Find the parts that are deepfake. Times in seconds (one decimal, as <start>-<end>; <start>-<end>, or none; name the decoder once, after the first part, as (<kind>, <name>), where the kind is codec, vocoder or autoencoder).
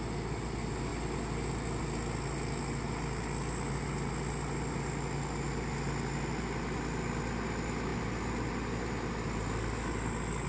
none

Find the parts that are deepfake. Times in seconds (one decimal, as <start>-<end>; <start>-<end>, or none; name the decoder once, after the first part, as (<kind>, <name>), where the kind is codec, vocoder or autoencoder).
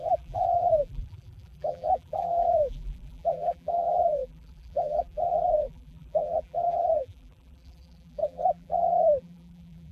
0.0-9.9 (vocoder, BigVGAN v2)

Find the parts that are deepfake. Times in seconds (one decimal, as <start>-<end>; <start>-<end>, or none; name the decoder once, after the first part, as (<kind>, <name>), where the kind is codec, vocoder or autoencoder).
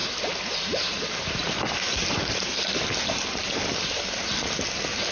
none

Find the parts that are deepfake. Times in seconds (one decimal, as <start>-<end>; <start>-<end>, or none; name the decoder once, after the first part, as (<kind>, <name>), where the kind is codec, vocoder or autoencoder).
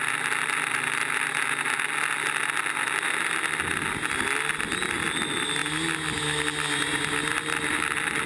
none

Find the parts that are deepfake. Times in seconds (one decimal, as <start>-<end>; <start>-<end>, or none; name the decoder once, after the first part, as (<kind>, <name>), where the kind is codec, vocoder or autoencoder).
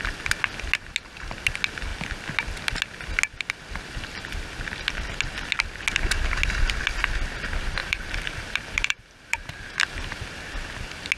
7.8-10.3 (vocoder, BigVGAN v2)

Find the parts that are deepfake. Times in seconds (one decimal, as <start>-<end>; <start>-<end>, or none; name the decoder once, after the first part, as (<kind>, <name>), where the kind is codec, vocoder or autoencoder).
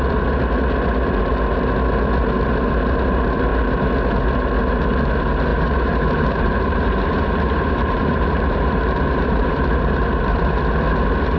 5.5-10.6 (vocoder, BigVGAN v2)